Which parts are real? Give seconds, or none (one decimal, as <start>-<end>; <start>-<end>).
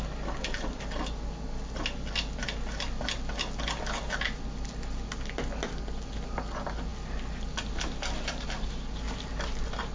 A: 0.0-9.9